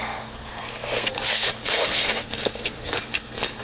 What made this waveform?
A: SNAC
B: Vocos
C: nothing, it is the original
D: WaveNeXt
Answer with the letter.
A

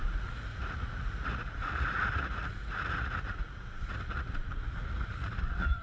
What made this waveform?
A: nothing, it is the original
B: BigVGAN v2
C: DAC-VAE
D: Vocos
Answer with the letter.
D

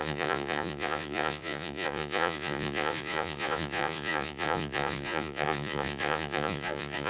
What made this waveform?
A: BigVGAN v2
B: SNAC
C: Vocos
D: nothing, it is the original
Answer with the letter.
C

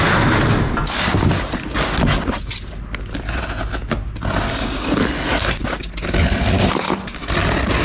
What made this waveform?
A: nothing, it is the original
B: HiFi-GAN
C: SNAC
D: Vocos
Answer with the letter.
A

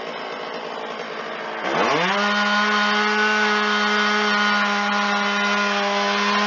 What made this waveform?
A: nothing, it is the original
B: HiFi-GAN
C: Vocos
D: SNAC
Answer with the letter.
A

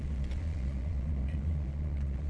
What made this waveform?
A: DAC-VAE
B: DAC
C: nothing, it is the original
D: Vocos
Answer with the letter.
D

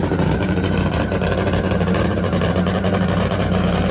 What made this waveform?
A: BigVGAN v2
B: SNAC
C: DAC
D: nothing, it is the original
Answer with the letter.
A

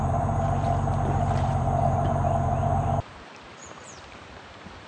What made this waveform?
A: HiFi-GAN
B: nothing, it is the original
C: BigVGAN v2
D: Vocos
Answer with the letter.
C